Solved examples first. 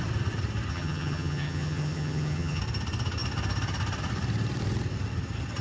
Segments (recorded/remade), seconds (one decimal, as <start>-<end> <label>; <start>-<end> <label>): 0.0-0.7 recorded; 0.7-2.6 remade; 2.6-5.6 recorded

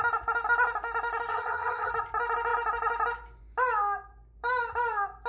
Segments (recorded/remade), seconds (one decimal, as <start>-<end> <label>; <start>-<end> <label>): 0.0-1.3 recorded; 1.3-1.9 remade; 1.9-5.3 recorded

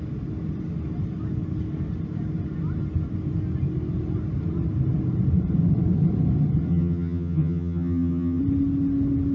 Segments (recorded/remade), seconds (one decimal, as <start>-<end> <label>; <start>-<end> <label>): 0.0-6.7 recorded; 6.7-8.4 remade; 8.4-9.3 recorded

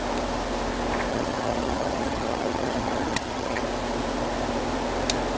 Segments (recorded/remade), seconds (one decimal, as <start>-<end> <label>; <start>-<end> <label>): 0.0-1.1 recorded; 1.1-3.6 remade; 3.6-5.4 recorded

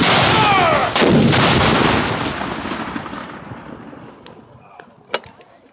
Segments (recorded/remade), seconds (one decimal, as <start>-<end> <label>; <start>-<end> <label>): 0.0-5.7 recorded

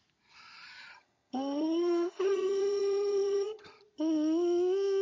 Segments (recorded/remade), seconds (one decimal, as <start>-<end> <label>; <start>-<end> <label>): 0.0-0.9 recorded; 0.9-3.8 remade; 3.8-5.0 recorded